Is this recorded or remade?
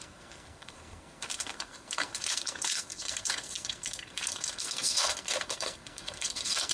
remade